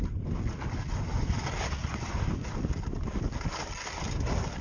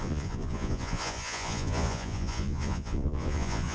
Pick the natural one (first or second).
first